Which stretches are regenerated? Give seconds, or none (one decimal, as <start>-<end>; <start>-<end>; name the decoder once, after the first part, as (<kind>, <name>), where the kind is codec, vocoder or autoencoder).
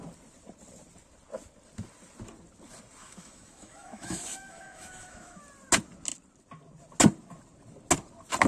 3.0-5.4 (autoencoder, DAC-VAE)